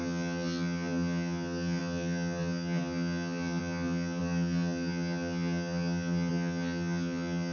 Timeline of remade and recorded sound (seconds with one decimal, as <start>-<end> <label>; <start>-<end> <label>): 0.0-7.5 remade